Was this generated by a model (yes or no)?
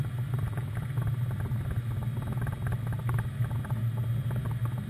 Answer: no